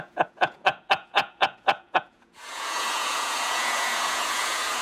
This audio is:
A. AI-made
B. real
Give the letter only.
A